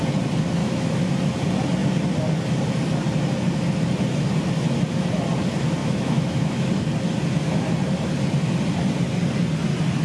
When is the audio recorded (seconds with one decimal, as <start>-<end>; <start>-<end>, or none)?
0.0-0.6; 1.1-5.8; 6.7-10.0